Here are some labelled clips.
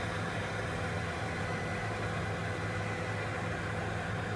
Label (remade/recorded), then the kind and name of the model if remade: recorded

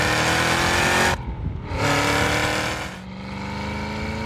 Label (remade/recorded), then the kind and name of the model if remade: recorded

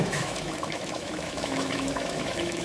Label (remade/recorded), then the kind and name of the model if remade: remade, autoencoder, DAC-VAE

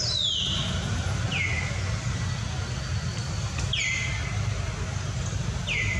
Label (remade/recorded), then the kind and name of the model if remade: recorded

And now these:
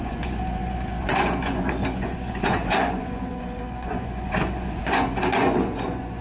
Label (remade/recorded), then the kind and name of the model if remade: remade, vocoder, Vocos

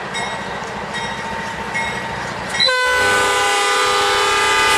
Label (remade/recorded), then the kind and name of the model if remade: recorded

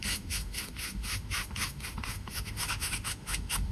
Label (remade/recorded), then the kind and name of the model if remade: remade, autoencoder, DAC-VAE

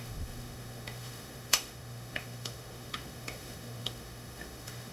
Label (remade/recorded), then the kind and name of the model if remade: remade, autoencoder, DAC-VAE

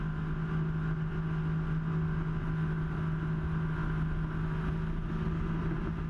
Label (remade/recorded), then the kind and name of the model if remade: recorded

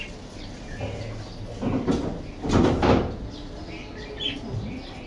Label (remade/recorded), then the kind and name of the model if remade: recorded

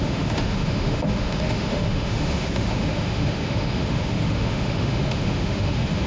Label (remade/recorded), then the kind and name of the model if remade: remade, autoencoder, DAC-VAE